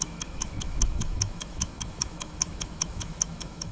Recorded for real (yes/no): no